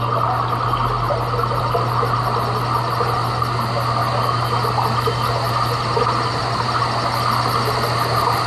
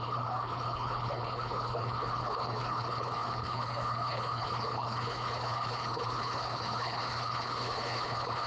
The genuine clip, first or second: first